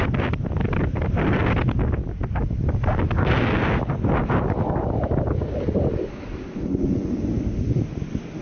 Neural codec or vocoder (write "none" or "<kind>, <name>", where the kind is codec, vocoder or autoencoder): none